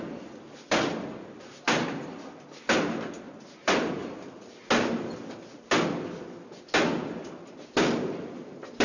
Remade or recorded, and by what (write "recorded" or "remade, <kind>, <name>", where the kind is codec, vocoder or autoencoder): recorded